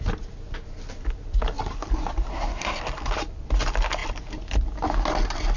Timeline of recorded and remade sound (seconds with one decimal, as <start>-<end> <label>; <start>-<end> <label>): 0.0-2.3 recorded; 2.3-2.8 remade; 2.8-5.6 recorded